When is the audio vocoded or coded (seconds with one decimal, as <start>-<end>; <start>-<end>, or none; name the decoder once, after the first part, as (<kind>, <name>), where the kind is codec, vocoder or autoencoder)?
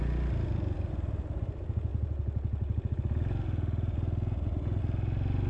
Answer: none